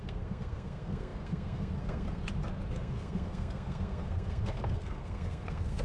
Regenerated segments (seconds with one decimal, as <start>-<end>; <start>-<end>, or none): 0.0-2.2; 2.7-5.8